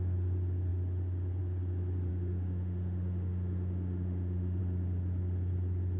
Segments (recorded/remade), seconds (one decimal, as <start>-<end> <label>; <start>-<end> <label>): 0.0-2.1 recorded; 2.1-4.6 remade; 4.6-6.0 recorded